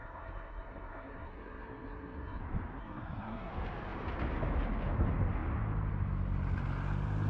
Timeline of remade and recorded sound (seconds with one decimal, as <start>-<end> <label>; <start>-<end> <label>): 0.0-2.4 remade; 2.4-2.8 recorded; 2.8-3.5 remade; 3.5-7.3 recorded